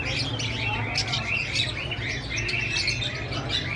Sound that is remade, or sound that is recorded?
recorded